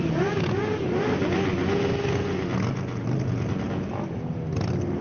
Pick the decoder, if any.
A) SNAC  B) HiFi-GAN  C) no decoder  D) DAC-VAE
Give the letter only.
C